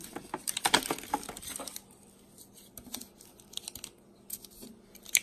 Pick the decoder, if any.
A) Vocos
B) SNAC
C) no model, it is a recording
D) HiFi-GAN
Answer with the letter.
C